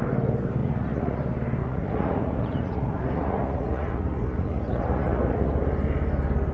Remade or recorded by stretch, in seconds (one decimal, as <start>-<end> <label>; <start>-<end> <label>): 0.0-0.6 recorded; 0.6-1.2 remade; 1.2-1.6 recorded; 1.6-5.5 remade; 5.5-6.5 recorded